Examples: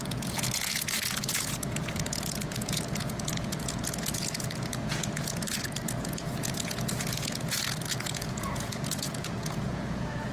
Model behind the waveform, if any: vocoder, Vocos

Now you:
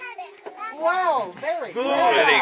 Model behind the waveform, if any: vocoder, Vocos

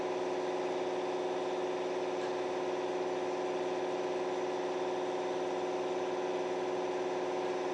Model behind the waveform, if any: none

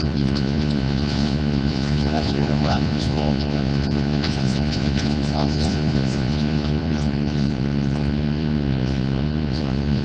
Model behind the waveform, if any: vocoder, Vocos